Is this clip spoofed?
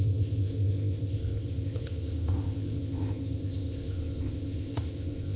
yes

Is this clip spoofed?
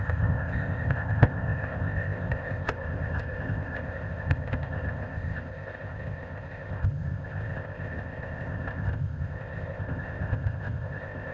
yes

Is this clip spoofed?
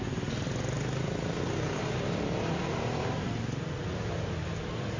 no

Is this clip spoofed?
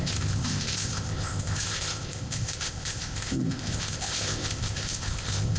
yes